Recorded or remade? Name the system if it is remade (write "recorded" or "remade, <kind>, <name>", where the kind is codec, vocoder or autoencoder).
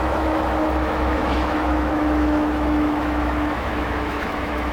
remade, autoencoder, DAC-VAE